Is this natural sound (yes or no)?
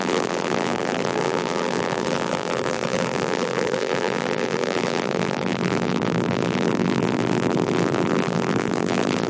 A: no